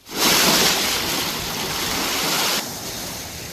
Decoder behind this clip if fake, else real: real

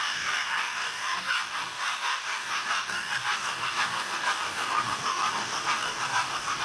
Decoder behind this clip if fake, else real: fake, codec, DAC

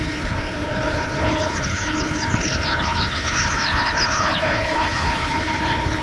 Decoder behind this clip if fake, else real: fake, codec, HILCodec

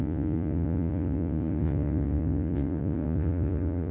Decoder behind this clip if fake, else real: fake, vocoder, Vocos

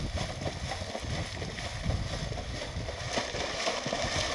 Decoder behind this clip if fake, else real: real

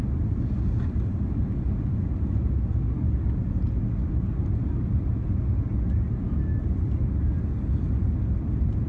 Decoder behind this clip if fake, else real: real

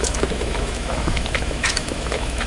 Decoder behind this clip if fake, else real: fake, autoencoder, DAC-VAE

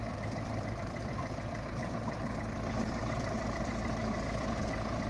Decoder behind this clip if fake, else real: fake, vocoder, BigVGAN v2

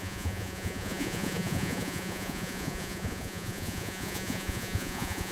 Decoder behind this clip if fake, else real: fake, vocoder, Vocos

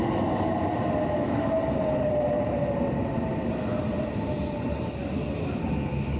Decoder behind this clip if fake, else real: real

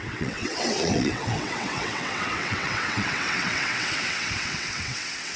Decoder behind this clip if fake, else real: fake, vocoder, WaveNeXt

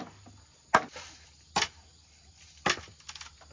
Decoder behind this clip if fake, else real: real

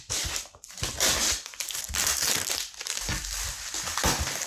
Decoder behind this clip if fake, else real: fake, vocoder, BigVGAN v2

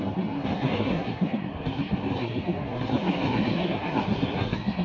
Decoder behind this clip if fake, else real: fake, codec, SNAC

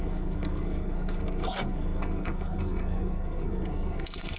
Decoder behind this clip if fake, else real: fake, codec, SNAC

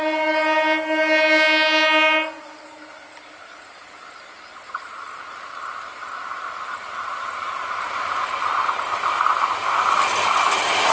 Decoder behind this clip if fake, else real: real